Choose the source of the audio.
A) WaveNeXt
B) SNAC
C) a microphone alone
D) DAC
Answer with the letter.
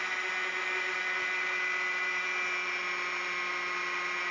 C